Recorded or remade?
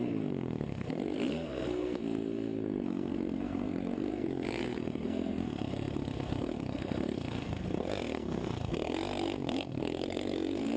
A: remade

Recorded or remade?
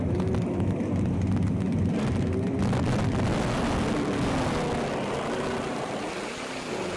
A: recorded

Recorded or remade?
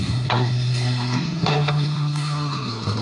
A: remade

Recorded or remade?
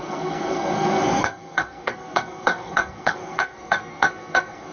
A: remade